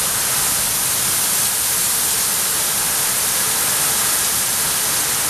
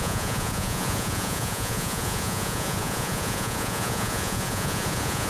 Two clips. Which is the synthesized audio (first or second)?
second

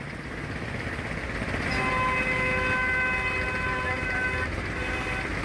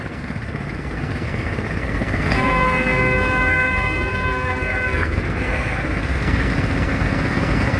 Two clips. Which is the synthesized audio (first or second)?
second